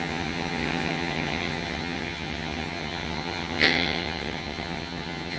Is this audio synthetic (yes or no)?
yes